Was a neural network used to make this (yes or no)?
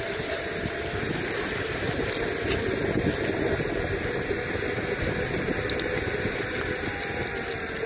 no